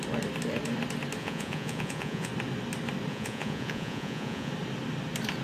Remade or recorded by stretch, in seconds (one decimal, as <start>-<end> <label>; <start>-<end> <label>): 0.0-1.2 recorded; 1.2-2.3 remade; 2.3-3.1 recorded; 3.1-4.5 remade; 4.5-5.4 recorded